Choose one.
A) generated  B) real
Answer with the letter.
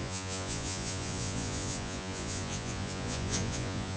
A